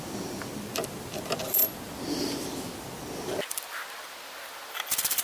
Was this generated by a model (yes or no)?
no